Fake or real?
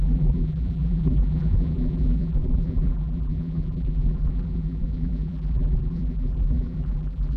fake